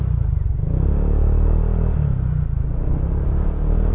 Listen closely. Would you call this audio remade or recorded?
recorded